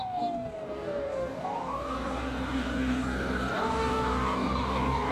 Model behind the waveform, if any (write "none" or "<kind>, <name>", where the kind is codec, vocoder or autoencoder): codec, DAC